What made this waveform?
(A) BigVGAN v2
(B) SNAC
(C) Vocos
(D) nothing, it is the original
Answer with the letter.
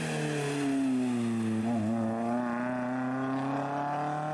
D